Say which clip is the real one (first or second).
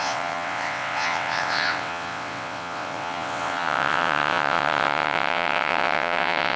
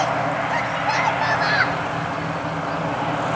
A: second